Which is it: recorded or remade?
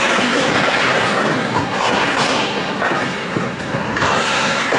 remade